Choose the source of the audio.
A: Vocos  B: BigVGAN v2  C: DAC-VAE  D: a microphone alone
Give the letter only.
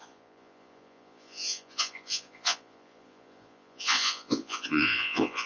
A